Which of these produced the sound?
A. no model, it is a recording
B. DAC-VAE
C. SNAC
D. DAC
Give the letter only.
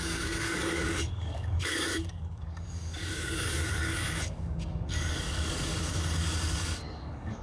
D